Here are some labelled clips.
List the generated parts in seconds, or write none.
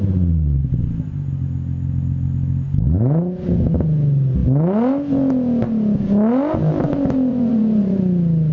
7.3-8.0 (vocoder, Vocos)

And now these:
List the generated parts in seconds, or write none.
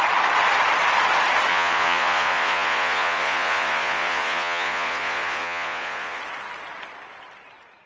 1.5-6.2 (vocoder, Vocos)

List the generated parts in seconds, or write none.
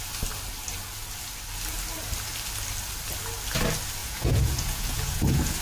4.0-5.6 (vocoder, Vocos)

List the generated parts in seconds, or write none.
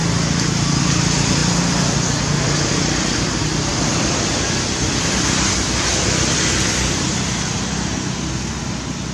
0.0-0.8 (vocoder, BigVGAN v2); 3.7-7.1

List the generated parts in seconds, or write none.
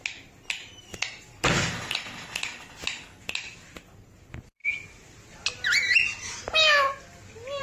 none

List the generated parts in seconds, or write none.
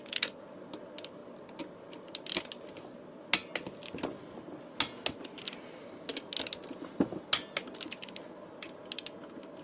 none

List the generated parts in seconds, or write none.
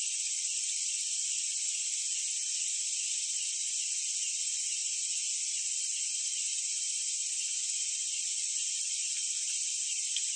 4.8-5.7 (vocoder, BigVGAN v2); 6.4-7.4